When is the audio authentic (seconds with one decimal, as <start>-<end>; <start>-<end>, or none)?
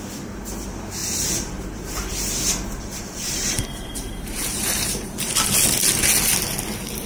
0.0-1.0; 5.3-7.1